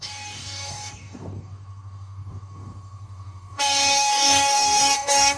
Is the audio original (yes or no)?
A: no